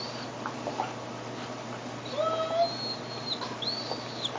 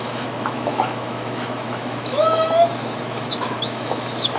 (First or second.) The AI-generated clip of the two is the second